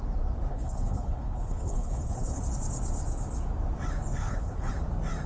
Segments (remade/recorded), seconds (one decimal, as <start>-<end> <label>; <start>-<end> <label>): 0.0-0.5 recorded; 0.5-2.4 remade; 2.4-4.2 recorded; 4.2-4.7 remade; 4.7-5.3 recorded